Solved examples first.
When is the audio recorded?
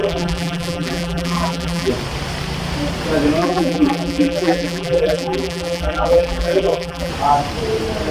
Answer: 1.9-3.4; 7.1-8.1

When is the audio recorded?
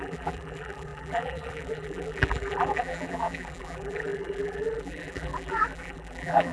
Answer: none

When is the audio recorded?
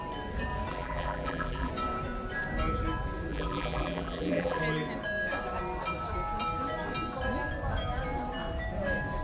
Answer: 0.0-0.7; 1.7-3.3; 4.6-9.2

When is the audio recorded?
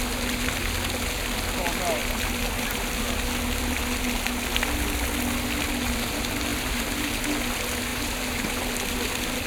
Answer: 0.0-6.5; 7.2-7.9; 8.6-9.5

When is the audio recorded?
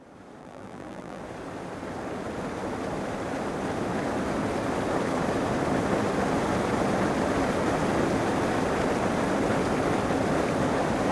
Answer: 0.0-0.4; 1.2-11.1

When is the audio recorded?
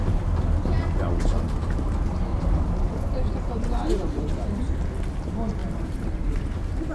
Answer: 0.0-2.3; 4.6-5.6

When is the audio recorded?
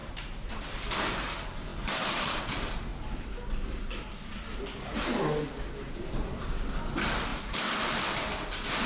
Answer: 0.6-1.7; 2.4-7.3; 8.0-8.9